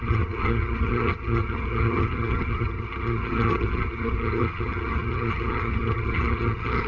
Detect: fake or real fake